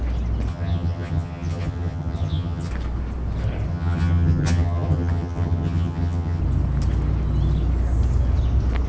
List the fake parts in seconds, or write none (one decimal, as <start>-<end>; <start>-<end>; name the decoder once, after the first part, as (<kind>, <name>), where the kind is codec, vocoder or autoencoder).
0.5-2.7 (vocoder, HiFi-GAN); 3.7-6.4